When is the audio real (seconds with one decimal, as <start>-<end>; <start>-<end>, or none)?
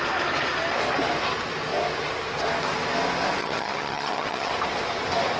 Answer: 0.0-3.4; 4.5-5.4